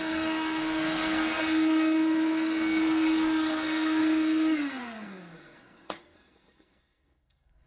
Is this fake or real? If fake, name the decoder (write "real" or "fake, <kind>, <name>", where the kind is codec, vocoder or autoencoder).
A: fake, codec, SNAC